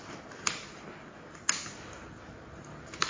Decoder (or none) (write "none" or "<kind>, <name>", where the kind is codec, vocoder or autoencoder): none